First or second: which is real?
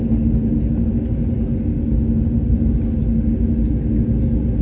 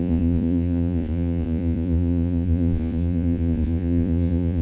first